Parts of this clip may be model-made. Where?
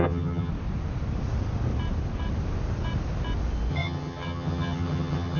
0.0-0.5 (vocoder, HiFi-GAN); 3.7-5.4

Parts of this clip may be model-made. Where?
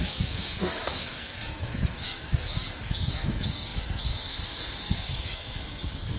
0.0-6.2 (codec, SNAC)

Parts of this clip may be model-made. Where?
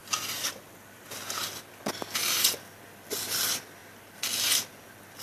none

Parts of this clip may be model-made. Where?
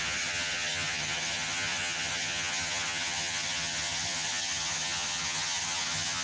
0.0-6.2 (vocoder, HiFi-GAN)